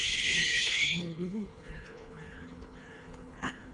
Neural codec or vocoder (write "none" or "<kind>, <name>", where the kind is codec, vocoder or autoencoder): codec, HILCodec